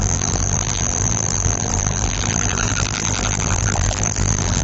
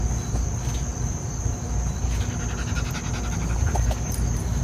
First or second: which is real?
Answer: second